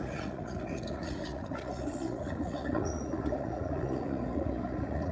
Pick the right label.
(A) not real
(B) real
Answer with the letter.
A